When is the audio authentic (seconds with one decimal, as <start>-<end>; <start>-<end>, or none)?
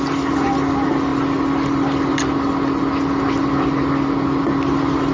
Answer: 0.0-5.1